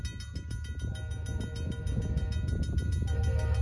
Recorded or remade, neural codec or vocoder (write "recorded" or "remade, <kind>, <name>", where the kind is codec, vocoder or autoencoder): recorded